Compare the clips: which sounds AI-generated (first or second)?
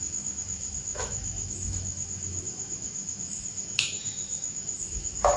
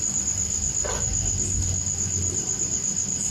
first